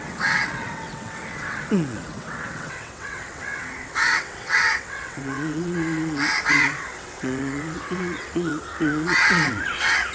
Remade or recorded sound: remade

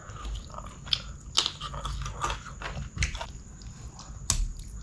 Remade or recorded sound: recorded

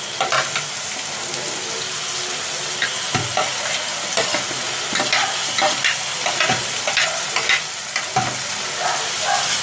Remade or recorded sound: recorded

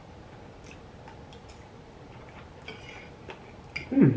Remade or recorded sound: recorded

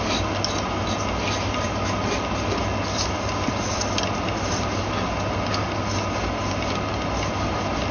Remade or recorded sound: recorded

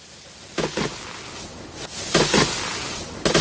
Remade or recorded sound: recorded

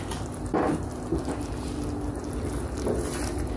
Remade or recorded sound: recorded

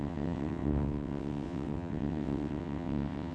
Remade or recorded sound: remade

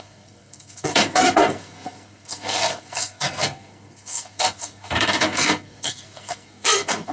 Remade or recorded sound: remade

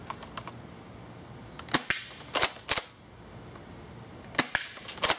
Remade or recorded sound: recorded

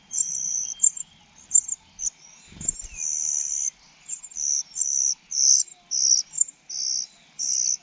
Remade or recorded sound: recorded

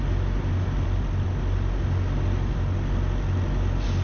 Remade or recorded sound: recorded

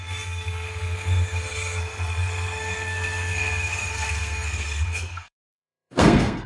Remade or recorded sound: remade